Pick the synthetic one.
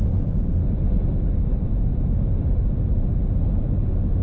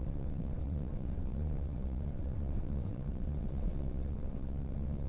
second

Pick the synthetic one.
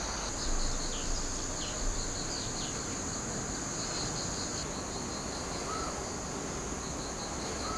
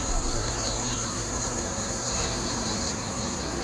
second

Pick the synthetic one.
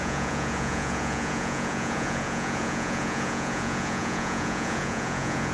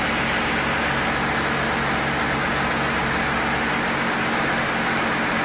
first